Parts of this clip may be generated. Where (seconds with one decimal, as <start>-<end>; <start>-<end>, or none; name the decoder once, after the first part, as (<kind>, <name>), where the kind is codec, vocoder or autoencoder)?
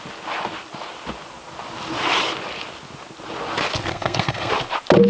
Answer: 3.9-4.5 (codec, SNAC)